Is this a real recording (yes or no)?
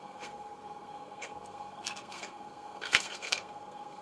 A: no